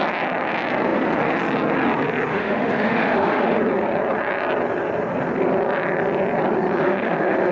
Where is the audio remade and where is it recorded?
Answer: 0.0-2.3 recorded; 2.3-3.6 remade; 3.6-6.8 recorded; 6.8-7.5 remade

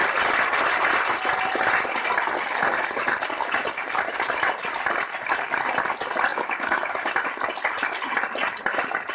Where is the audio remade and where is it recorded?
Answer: 0.0-6.3 recorded; 6.3-7.1 remade; 7.1-9.1 recorded

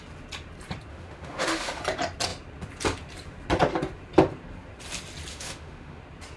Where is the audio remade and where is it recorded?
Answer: 0.0-0.9 recorded; 0.9-1.8 remade; 1.8-5.3 recorded; 5.3-6.0 remade; 6.0-6.4 recorded

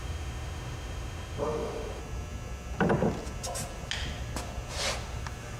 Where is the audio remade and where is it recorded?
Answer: 0.0-2.0 remade; 2.0-5.6 recorded

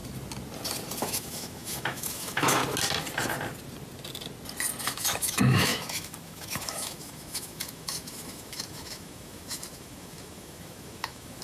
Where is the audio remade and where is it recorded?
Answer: 0.0-1.0 recorded; 1.0-2.6 remade; 2.6-4.8 recorded; 4.8-11.4 remade

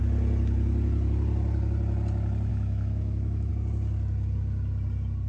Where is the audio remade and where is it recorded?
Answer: 0.0-2.5 recorded; 2.5-3.5 remade; 3.5-5.3 recorded

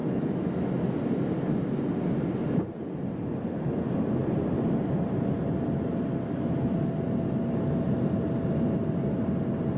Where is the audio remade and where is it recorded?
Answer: 0.0-1.0 remade; 1.0-9.8 recorded

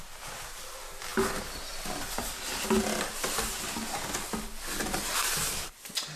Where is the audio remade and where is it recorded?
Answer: 0.0-6.2 recorded